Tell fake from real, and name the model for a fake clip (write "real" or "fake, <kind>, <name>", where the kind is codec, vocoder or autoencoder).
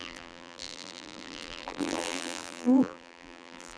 fake, vocoder, BigVGAN v2